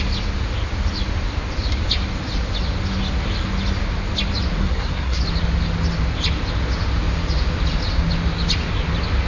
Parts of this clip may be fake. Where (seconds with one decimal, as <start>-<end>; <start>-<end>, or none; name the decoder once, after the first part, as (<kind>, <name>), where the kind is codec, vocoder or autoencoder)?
4.6-5.2 (codec, SNAC)